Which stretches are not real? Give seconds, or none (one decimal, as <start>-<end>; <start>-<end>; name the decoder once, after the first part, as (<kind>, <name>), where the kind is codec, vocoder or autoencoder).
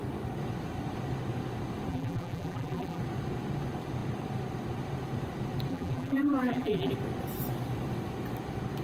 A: 1.9-3.0 (vocoder, BigVGAN v2); 5.7-6.9